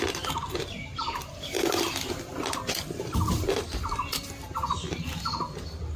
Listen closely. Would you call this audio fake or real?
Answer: real